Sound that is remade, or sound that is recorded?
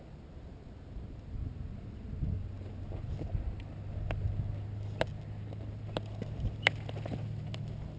recorded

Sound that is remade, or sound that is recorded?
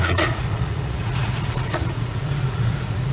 remade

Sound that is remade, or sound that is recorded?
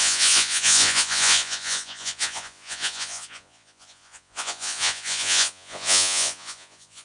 remade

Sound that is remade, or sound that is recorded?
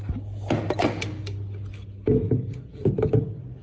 recorded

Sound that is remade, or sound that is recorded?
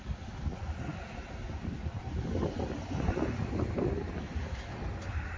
recorded